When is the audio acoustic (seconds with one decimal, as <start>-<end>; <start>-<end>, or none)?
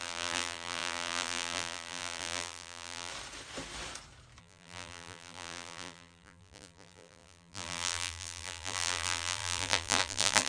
3.1-4.4